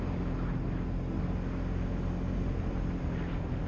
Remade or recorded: recorded